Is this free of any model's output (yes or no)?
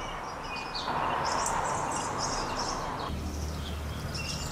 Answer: yes